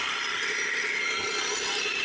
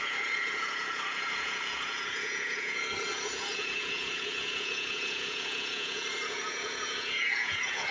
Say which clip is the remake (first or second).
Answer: second